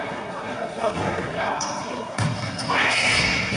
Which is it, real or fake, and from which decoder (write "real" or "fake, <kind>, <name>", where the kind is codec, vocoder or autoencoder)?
fake, codec, SNAC